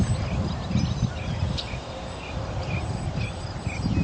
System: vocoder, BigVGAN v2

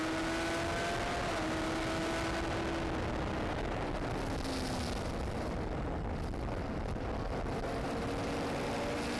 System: none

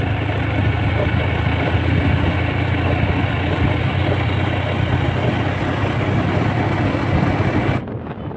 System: none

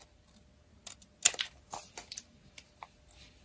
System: none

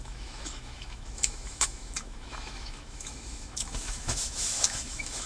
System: autoencoder, DAC-VAE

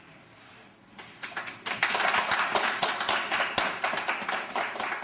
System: none